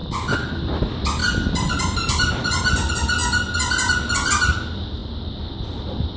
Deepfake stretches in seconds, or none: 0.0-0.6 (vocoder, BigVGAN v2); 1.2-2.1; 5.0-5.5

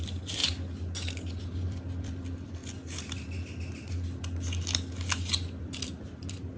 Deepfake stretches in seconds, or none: 0.0-0.4 (vocoder, BigVGAN v2); 1.4-2.6; 5.6-6.6